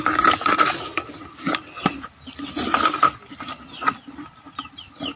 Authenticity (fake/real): real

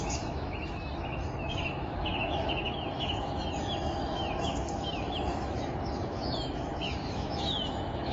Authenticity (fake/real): fake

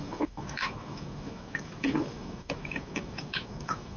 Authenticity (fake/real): fake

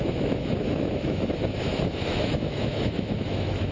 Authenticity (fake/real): fake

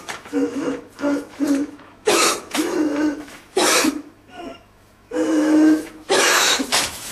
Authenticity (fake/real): fake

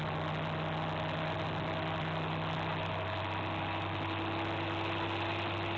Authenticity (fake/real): real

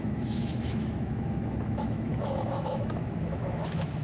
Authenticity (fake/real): fake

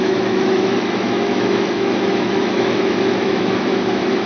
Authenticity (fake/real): fake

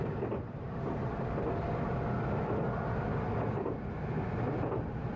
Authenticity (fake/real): real